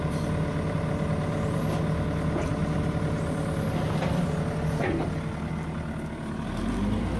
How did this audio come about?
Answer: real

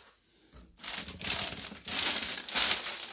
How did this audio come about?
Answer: real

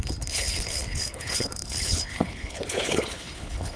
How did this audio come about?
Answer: fake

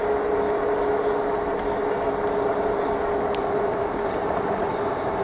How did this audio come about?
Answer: real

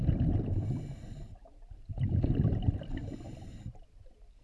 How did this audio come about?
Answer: real